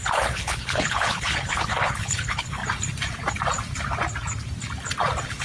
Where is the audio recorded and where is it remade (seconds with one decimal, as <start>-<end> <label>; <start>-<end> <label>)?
0.0-2.6 remade; 2.6-5.4 recorded